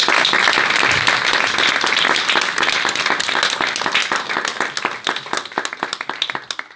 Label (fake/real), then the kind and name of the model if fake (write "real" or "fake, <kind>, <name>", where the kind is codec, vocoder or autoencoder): real